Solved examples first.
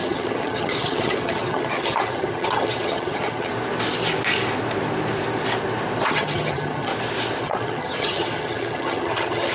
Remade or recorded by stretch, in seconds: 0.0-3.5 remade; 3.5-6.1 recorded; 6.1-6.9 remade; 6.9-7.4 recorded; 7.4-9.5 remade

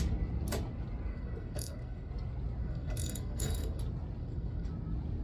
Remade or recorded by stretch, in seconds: 0.0-1.1 recorded; 1.1-2.1 remade; 2.1-2.6 recorded; 2.6-3.8 remade; 3.8-4.2 recorded; 4.2-4.7 remade; 4.7-5.2 recorded

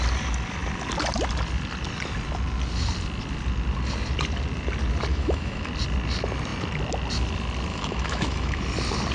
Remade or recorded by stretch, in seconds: 0.0-5.1 recorded; 5.1-5.7 remade; 5.7-7.7 recorded; 7.7-8.6 remade; 8.6-9.1 recorded